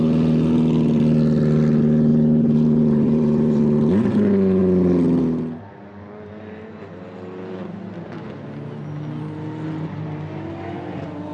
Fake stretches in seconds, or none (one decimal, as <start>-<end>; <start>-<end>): 2.1-3.6